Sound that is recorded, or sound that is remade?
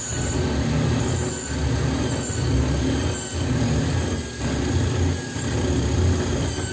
recorded